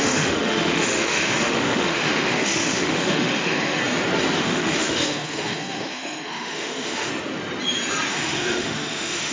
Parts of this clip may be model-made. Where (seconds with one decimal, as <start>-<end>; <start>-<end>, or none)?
0.0-3.8; 4.4-7.1; 8.1-9.3